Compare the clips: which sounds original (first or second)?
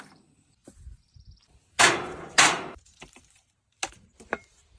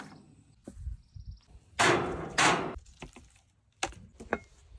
second